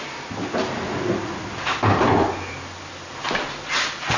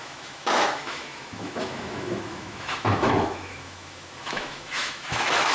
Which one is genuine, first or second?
first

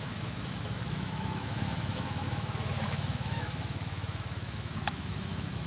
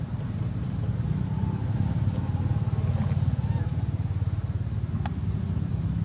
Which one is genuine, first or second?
second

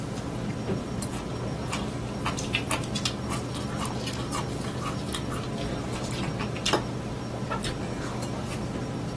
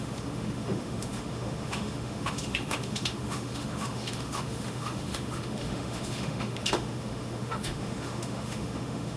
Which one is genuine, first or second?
first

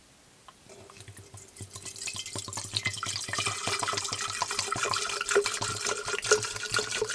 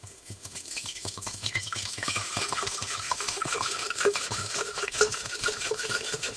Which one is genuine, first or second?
first